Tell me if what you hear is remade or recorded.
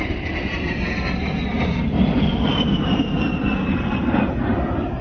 recorded